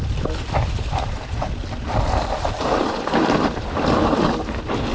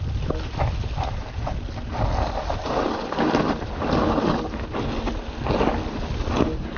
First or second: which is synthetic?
first